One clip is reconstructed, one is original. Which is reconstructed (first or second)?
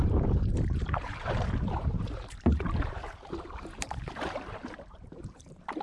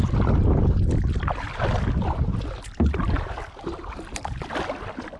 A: first